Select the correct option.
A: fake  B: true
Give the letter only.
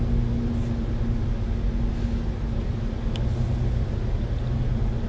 B